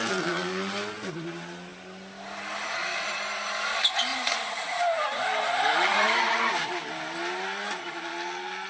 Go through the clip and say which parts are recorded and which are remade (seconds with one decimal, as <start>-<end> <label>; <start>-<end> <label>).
0.0-5.9 recorded; 5.9-6.6 remade; 6.6-8.7 recorded